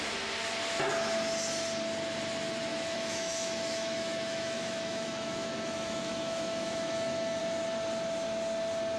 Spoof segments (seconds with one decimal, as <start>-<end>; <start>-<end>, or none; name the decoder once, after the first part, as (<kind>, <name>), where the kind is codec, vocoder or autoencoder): 2.7-7.4 (autoencoder, DAC-VAE)